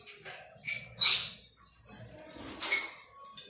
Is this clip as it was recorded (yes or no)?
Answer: yes